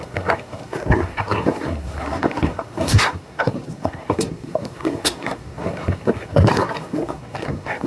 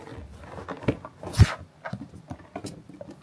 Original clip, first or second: second